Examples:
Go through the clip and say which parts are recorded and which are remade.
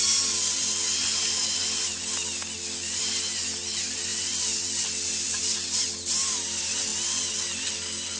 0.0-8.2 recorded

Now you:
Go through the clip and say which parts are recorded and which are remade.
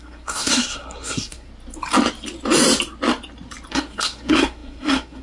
0.0-1.5 remade; 1.5-3.7 recorded; 3.7-5.2 remade